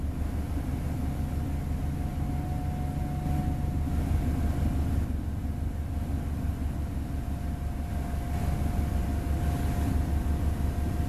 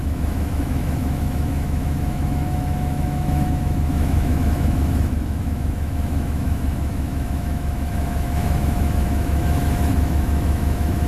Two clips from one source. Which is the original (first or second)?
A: first